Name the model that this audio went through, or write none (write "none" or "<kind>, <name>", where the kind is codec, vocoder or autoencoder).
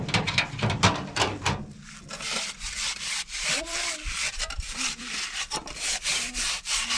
vocoder, BigVGAN v2